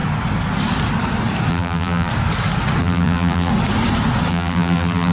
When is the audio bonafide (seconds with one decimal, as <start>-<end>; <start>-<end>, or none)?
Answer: 0.0-1.5; 2.1-2.8; 3.5-4.3